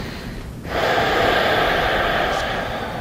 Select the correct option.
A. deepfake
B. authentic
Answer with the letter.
A